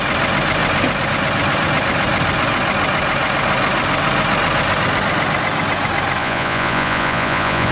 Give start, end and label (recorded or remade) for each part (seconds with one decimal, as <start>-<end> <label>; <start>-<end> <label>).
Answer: 0.0-6.2 recorded; 6.2-7.7 remade